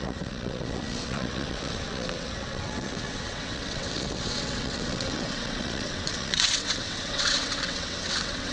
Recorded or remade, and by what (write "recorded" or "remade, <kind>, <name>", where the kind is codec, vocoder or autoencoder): remade, vocoder, WaveNeXt